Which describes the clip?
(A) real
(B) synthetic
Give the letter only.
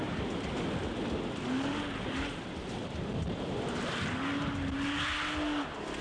A